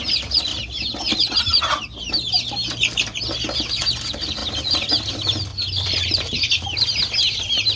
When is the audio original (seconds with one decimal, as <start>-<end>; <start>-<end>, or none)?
0.0-0.5; 1.6-5.5; 6.4-7.8